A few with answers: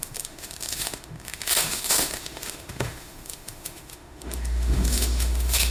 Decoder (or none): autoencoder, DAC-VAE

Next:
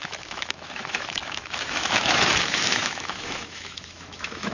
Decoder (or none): autoencoder, DAC-VAE